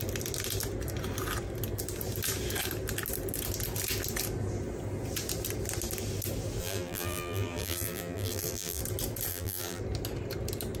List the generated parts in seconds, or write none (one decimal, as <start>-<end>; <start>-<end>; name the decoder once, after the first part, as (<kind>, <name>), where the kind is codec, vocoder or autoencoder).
6.6-8.8 (vocoder, BigVGAN v2); 9.3-9.8